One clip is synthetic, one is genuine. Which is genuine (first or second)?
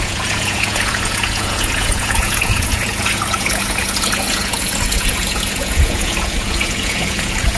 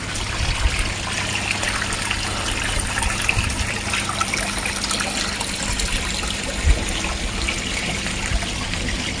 second